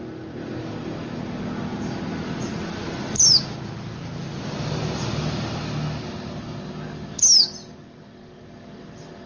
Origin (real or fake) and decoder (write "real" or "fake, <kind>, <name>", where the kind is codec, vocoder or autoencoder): real